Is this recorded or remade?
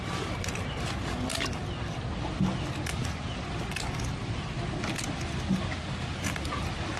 recorded